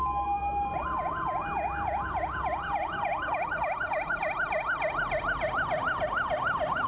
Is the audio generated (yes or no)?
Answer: no